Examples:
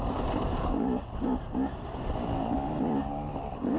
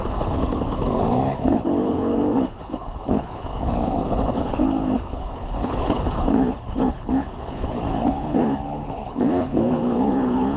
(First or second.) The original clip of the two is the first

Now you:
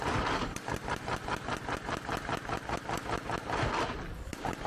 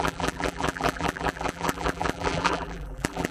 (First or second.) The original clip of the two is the first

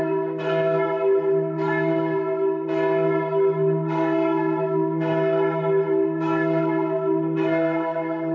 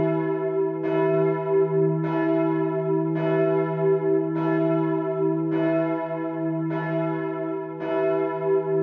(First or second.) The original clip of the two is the second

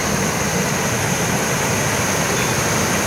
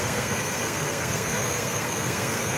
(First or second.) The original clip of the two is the first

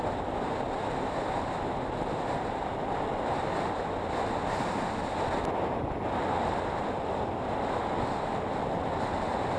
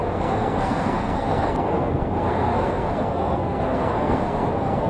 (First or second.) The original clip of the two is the first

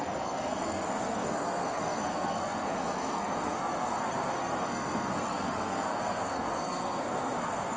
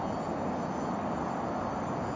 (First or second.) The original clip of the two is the second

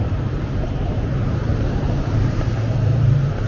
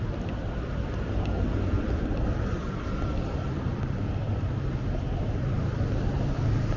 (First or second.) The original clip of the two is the second